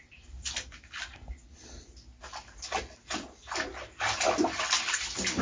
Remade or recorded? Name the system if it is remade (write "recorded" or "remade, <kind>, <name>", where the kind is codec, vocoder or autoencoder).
recorded